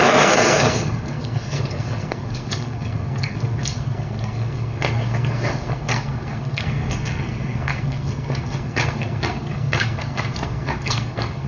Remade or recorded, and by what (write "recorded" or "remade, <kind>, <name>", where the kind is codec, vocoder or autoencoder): remade, codec, SNAC